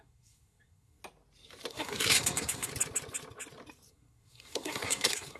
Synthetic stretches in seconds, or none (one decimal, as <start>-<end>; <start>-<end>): 0.0-1.0; 1.7-2.7; 3.9-5.4